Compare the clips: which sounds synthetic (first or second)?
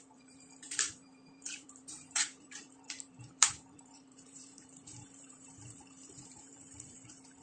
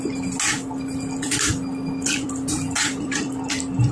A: first